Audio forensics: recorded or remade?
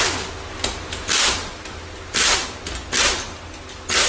recorded